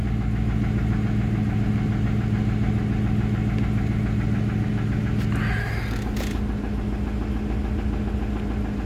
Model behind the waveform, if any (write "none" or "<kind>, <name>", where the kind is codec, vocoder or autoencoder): none